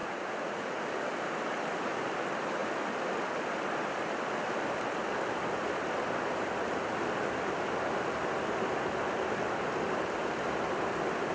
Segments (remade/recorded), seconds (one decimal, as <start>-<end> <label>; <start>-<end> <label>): 0.0-0.8 remade; 0.8-11.3 recorded